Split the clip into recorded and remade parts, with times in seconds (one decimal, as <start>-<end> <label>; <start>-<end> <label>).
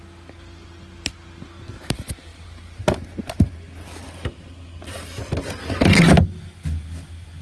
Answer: 0.0-7.4 recorded